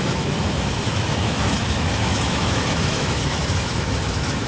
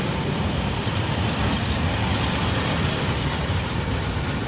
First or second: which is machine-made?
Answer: first